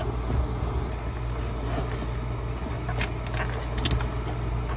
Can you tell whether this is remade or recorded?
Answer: recorded